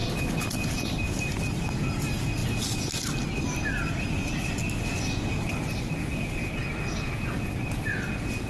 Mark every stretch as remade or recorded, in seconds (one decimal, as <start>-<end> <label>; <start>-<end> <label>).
0.0-8.5 recorded